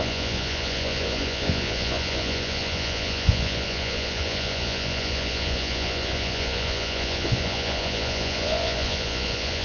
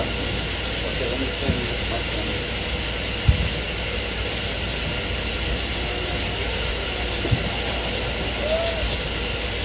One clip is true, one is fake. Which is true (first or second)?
second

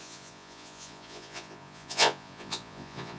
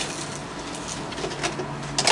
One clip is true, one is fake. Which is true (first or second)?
second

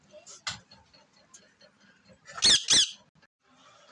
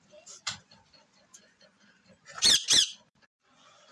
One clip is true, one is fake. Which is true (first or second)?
first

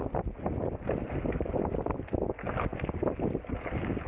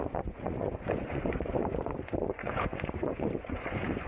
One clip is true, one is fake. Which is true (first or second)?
first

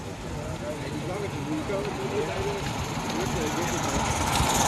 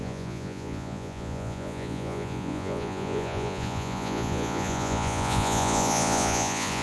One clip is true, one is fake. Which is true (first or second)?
first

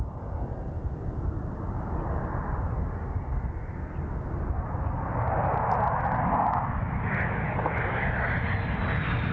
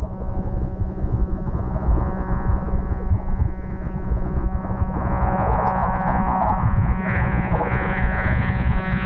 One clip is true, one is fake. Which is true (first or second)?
first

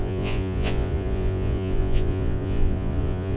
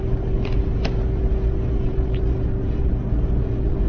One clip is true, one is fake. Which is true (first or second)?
second